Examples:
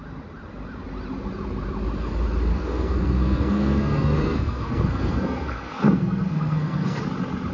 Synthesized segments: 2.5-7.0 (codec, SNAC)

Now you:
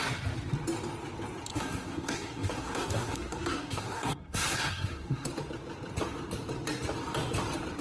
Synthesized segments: 1.5-5.3 (codec, SNAC)